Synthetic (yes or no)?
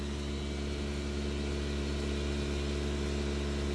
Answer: no